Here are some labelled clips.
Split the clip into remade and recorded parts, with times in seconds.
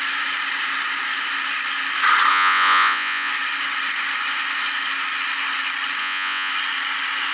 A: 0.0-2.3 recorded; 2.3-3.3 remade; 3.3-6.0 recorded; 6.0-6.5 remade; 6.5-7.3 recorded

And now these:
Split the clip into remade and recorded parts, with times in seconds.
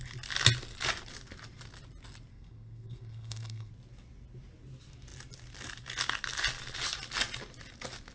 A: 0.0-2.3 recorded; 2.3-3.7 remade; 3.7-8.1 recorded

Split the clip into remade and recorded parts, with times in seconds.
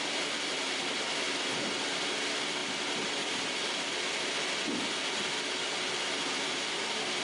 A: 0.0-7.2 recorded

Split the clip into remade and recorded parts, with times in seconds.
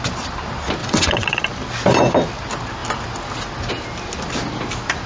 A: 0.0-0.8 recorded; 0.8-1.4 remade; 1.4-5.1 recorded